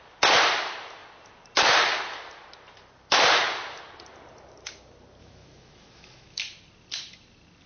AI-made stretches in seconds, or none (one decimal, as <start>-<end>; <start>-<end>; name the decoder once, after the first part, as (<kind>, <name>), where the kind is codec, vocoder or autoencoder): 5.2-6.4 (autoencoder, DAC-VAE)